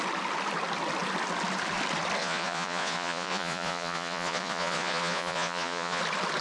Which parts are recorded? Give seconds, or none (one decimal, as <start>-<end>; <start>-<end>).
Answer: 0.0-2.2; 6.0-6.4